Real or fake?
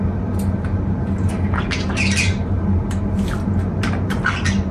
real